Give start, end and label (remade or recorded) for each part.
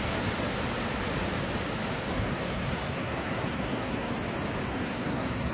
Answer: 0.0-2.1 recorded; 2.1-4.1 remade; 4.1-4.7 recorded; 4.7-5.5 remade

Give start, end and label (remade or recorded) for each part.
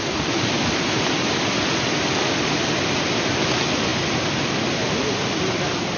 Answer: 0.0-6.0 recorded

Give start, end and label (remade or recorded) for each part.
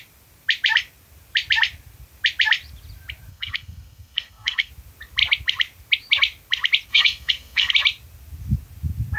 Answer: 0.0-3.3 recorded; 3.3-4.7 remade; 4.7-6.9 recorded; 6.9-7.7 remade; 7.7-9.2 recorded